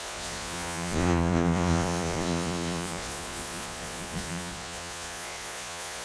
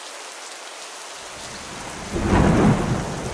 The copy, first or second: first